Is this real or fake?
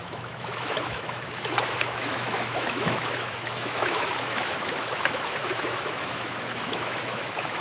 fake